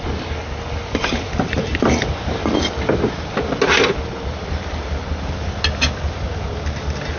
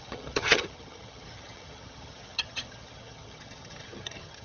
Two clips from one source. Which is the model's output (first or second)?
second